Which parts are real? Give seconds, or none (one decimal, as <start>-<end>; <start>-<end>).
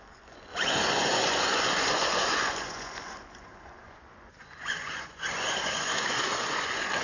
none